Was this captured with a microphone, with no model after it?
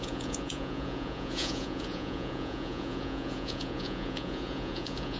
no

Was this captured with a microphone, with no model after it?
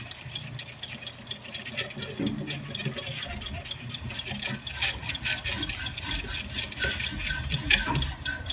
yes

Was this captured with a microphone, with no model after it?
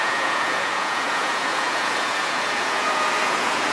no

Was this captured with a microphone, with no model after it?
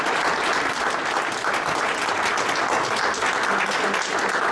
yes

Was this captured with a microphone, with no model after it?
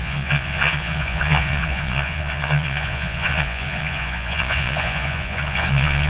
no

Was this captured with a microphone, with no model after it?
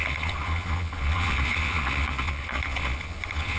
no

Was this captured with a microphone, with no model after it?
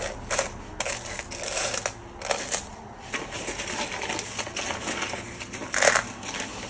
yes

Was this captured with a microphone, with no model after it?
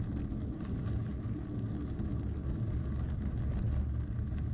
yes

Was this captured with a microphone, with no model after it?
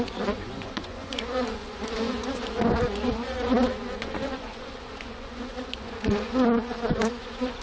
no